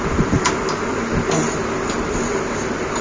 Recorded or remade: recorded